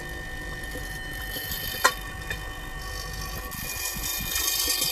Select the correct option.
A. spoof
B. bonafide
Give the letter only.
B